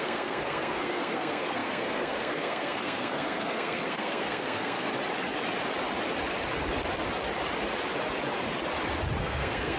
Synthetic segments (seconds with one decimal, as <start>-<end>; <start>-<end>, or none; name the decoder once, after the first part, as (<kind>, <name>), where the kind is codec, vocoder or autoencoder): 0.0-4.9 (codec, SNAC); 9.2-9.8